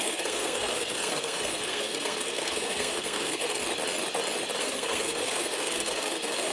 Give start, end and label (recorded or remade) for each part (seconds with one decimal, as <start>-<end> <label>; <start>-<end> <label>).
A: 0.0-3.6 remade; 3.6-4.6 recorded; 4.6-6.5 remade